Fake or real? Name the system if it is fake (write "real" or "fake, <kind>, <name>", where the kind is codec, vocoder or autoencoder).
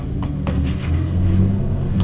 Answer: fake, codec, SNAC